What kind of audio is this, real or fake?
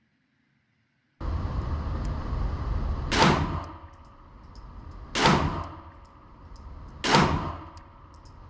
real